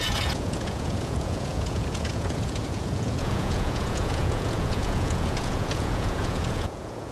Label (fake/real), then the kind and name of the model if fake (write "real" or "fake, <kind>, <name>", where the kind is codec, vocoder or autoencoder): fake, vocoder, Vocos